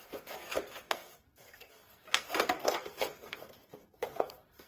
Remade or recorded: remade